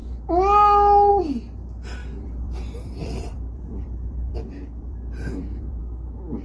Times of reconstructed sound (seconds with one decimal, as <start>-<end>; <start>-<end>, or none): 2.0-5.8